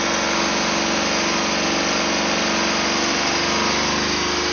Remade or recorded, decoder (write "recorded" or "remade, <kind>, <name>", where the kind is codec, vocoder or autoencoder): recorded